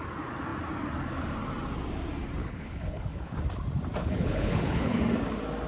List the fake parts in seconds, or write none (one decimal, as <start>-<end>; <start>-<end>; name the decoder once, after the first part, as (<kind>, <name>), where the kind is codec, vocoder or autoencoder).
2.4-3.4 (codec, HILCodec); 4.0-5.0